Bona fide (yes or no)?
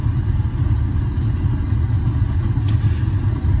yes